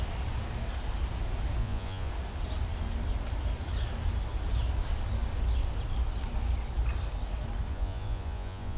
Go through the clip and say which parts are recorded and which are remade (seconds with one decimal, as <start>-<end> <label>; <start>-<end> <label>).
0.0-1.6 recorded; 1.6-2.1 remade; 2.1-7.7 recorded; 7.7-8.8 remade

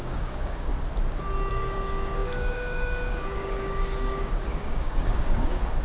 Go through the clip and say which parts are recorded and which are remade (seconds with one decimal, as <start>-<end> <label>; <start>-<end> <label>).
0.0-0.7 remade; 0.7-1.5 recorded; 1.5-5.8 remade

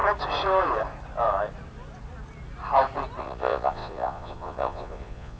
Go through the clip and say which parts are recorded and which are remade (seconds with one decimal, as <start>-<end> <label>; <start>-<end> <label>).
0.0-3.2 recorded; 3.2-5.4 remade